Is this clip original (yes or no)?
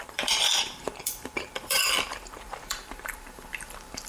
no